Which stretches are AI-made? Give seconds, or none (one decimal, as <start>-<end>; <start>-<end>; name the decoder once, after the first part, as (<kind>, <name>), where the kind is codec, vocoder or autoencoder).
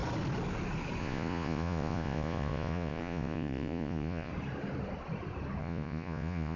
1.0-4.3 (vocoder, Vocos); 5.6-6.6